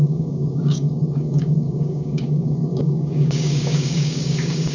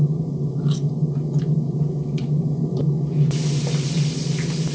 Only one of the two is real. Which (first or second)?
second